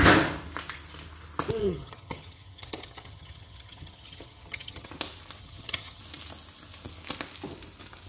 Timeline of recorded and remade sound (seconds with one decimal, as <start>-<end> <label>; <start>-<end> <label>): 0.0-1.6 recorded; 1.6-4.9 remade; 4.9-5.4 recorded; 5.4-6.0 remade; 6.0-8.1 recorded